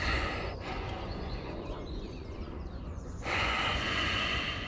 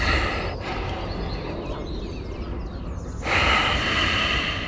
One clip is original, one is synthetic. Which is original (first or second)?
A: second